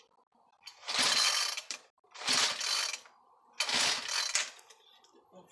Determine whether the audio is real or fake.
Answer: real